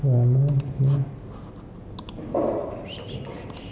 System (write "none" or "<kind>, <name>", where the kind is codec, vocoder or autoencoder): none